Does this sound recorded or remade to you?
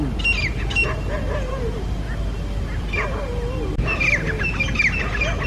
recorded